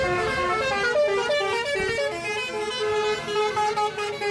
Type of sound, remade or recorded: recorded